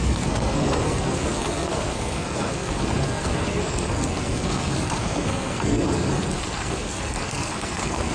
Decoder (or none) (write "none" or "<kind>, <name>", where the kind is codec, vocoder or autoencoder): codec, SNAC